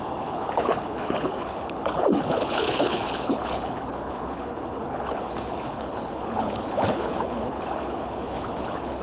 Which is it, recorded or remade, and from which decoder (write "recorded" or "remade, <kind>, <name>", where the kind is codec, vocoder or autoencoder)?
remade, codec, HILCodec